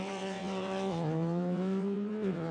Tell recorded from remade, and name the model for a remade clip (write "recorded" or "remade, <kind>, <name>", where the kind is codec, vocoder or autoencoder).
remade, vocoder, WaveNeXt